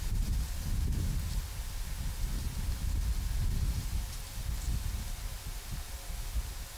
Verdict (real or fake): real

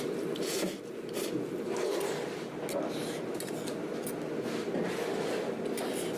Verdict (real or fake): real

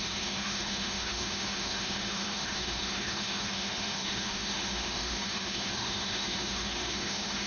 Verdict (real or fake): fake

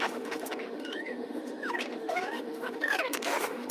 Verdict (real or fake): fake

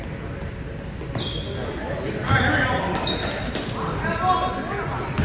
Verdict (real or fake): real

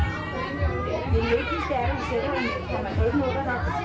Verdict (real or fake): real